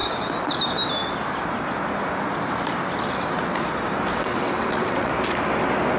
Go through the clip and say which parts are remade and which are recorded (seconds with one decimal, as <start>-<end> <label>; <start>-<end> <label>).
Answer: 0.0-4.1 recorded; 4.1-5.1 remade; 5.1-6.0 recorded